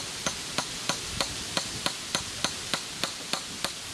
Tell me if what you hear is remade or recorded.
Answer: recorded